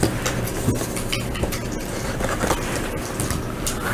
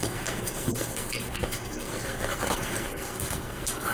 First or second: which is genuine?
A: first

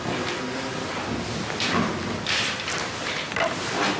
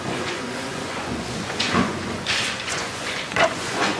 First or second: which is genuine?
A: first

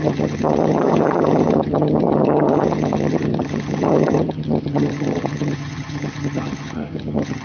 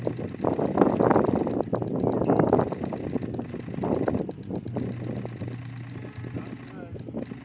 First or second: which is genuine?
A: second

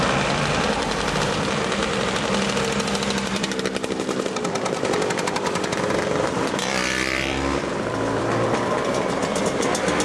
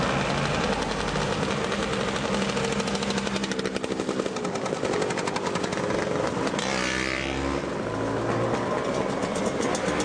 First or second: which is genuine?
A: second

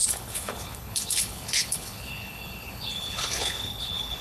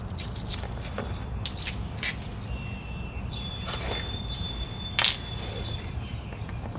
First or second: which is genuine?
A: second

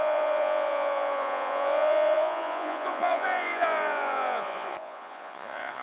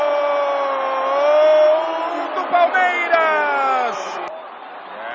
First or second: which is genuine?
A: second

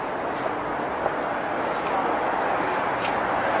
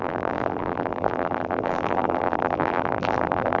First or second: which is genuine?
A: first